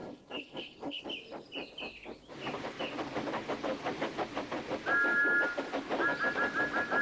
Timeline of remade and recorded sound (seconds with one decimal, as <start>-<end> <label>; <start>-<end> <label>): 0.0-1.0 remade; 1.0-7.0 recorded